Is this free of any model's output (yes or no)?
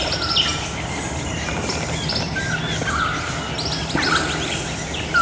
yes